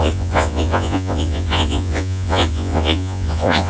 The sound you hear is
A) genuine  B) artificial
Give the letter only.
B